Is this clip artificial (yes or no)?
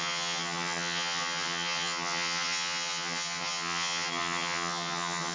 yes